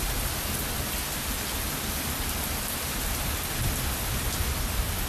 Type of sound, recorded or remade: recorded